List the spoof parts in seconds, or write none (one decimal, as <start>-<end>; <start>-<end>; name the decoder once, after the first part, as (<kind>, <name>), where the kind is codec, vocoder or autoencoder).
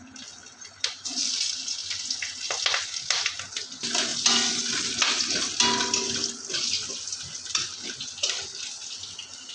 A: none